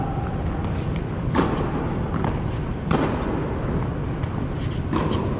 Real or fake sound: real